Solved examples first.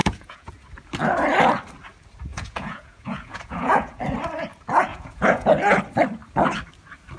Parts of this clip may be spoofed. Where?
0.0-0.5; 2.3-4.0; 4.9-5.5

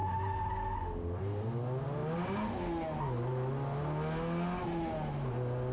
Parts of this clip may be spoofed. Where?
none

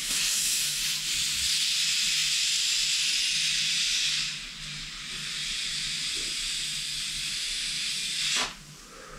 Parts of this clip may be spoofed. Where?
0.0-0.8; 7.3-7.9